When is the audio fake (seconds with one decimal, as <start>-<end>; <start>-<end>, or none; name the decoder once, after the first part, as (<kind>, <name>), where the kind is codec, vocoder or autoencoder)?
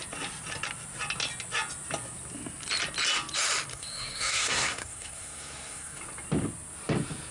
3.7-6.0 (codec, SNAC)